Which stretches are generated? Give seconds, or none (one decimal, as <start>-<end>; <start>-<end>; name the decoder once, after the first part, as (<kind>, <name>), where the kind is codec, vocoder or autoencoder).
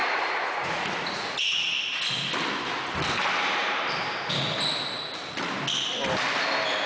0.0-1.6 (vocoder, Vocos)